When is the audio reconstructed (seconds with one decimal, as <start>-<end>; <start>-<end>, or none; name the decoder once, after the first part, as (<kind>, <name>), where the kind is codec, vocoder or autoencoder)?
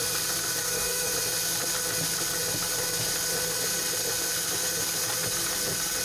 0.6-1.1 (codec, SNAC)